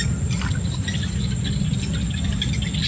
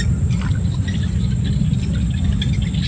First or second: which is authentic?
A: first